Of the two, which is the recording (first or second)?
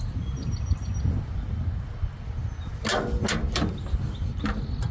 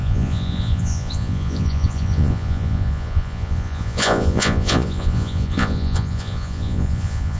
first